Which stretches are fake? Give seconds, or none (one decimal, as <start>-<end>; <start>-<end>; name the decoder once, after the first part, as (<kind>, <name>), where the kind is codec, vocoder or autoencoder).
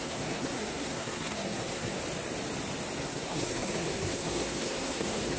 0.0-2.0 (codec, SNAC); 3.0-5.4